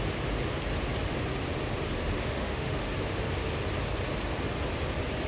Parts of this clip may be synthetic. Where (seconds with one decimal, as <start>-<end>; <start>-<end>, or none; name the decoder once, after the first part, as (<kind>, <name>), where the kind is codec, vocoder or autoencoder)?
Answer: 2.2-2.8 (autoencoder, DAC-VAE)